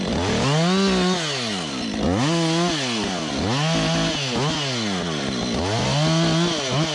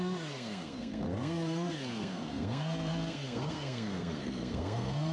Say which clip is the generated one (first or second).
second